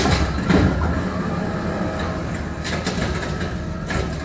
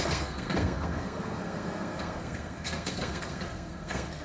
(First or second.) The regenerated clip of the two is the second